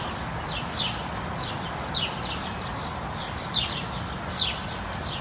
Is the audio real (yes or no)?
yes